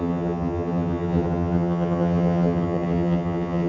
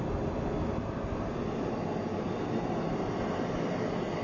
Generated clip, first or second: first